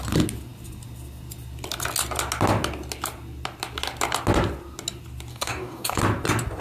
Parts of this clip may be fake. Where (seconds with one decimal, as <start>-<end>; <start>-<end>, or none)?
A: 5.3-6.0

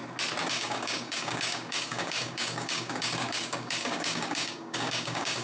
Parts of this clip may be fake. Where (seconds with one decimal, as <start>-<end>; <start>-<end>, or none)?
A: 0.5-5.4

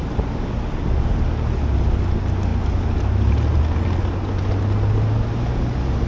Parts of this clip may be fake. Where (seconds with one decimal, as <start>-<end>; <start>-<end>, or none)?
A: none

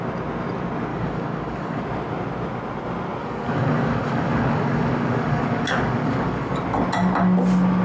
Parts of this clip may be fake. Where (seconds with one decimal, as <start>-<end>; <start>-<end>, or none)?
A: 0.9-1.8; 3.2-6.5

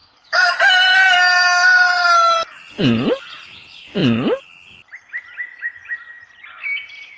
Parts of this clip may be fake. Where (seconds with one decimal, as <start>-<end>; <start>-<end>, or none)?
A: 0.0-0.6

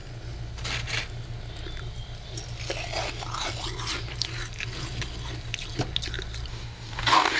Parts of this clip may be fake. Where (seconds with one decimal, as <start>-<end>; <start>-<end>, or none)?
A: 6.5-7.4

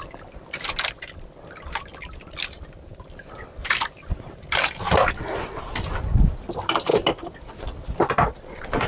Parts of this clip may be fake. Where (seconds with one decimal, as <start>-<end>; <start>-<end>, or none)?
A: none

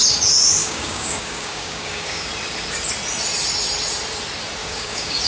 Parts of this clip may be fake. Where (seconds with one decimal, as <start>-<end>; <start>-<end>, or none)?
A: 0.6-2.3; 4.6-5.3